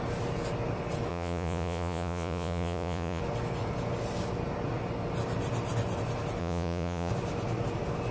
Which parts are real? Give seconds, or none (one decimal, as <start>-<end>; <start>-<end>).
0.0-1.1; 3.2-6.4; 7.1-8.1